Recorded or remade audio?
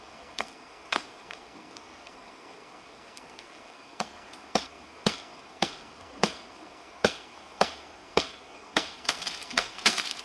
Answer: remade